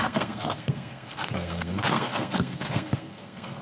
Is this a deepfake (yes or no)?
yes